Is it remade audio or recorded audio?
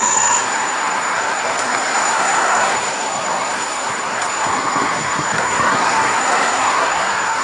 remade